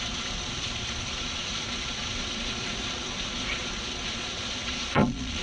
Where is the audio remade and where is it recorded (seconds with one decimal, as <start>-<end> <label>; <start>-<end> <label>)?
0.0-5.4 remade